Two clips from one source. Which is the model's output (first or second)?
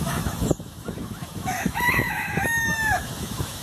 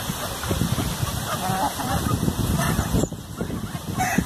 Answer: first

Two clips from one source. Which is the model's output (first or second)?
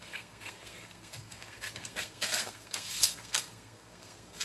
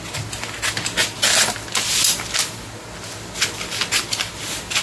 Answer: first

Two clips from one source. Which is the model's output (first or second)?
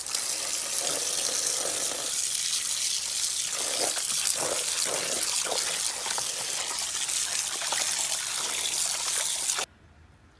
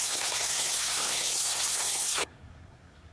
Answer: second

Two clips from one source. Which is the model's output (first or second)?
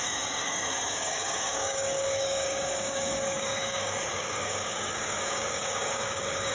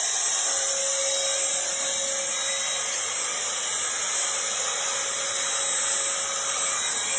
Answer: first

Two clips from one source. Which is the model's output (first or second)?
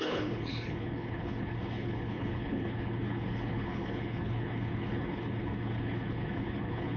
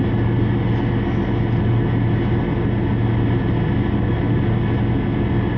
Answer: first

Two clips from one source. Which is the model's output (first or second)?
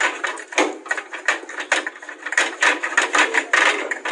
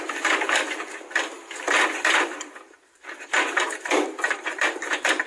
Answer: second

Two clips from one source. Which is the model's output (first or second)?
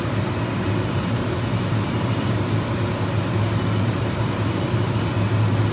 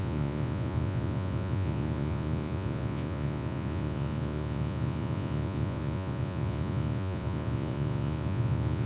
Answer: second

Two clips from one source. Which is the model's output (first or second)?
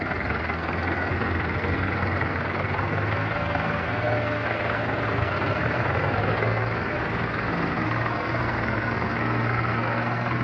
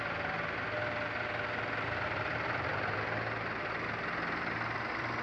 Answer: first